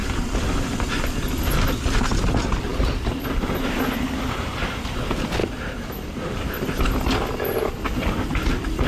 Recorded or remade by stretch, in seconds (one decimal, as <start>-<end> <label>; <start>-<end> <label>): 0.0-8.9 recorded